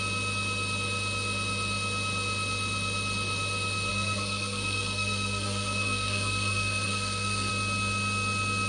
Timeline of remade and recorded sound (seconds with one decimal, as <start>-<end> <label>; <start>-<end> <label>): 0.0-3.9 recorded; 3.9-7.5 remade; 7.5-8.7 recorded